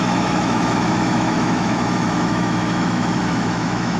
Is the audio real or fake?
fake